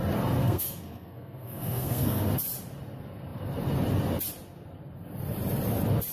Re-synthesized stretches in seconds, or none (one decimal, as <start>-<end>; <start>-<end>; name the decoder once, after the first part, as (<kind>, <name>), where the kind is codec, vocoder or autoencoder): 0.4-2.3 (codec, SNAC)